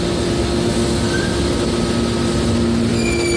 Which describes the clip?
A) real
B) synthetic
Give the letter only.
A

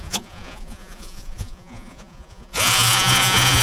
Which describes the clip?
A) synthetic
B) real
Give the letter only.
A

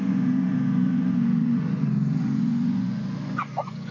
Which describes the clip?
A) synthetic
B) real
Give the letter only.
A